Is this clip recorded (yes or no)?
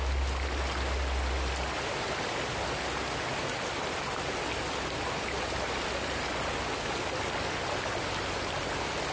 yes